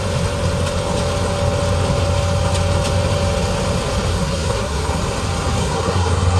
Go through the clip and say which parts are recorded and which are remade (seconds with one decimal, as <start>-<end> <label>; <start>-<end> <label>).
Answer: 0.0-4.1 recorded; 4.1-5.0 remade; 5.0-5.6 recorded; 5.6-6.4 remade